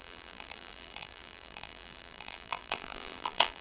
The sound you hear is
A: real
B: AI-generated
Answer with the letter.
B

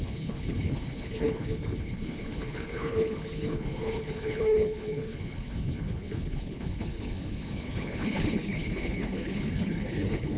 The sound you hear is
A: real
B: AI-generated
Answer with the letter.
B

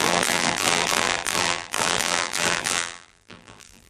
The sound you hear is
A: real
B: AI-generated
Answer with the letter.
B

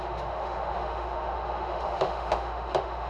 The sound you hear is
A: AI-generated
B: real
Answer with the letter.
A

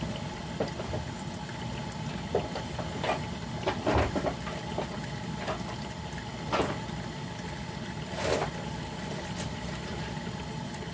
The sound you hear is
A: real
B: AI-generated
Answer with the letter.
A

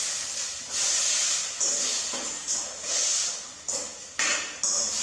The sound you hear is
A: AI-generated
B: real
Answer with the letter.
B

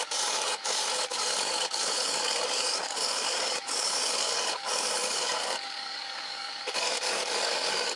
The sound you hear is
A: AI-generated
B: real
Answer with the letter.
A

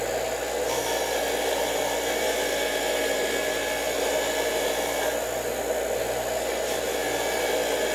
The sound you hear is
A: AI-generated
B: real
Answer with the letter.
B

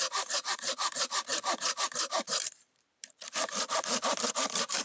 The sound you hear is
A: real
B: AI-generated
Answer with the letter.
B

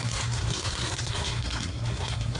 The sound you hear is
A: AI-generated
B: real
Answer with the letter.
A